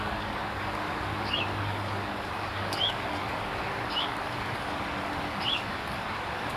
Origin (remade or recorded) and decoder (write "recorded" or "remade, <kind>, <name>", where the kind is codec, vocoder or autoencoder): remade, codec, DAC